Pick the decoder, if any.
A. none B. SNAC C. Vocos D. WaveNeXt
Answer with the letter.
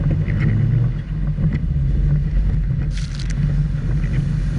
A